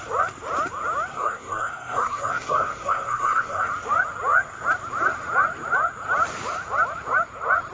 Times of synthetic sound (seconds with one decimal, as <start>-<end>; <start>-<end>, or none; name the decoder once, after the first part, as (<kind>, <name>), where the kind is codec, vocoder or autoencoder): 1.1-3.7 (codec, SNAC)